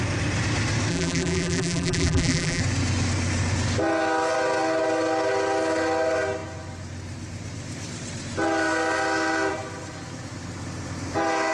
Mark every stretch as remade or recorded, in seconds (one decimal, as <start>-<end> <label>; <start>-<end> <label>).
0.0-0.9 recorded; 0.9-2.6 remade; 2.6-11.5 recorded